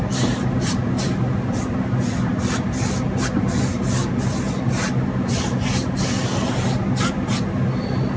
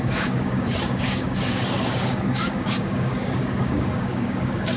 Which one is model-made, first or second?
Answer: second